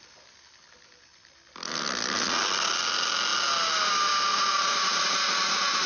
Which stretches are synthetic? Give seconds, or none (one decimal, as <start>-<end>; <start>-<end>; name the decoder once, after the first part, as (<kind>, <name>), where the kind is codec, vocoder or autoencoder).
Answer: 4.3-5.9 (vocoder, Vocos)

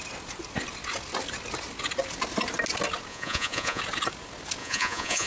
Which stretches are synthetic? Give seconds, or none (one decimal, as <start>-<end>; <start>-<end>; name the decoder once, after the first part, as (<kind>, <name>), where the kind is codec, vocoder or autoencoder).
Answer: 3.1-3.8 (vocoder, Vocos); 4.6-5.3

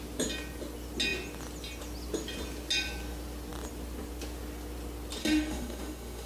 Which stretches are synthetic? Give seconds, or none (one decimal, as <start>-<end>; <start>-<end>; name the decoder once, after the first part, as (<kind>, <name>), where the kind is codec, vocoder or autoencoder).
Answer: 5.2-6.3 (autoencoder, DAC-VAE)

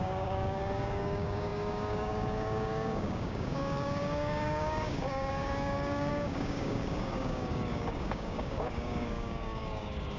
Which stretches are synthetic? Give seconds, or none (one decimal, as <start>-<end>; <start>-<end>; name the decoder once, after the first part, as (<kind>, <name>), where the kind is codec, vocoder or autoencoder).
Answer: 0.0-10.2 (codec, DAC)

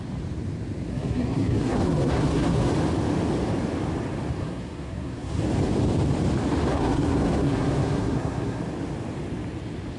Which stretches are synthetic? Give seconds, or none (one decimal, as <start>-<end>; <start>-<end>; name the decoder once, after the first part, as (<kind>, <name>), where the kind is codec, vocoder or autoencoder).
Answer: 0.9-2.7 (codec, SNAC); 4.4-5.4; 6.7-8.6

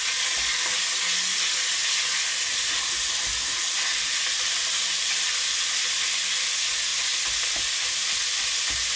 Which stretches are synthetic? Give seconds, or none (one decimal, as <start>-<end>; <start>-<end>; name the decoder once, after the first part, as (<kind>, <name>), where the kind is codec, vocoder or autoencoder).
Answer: 3.9-5.7 (vocoder, BigVGAN v2)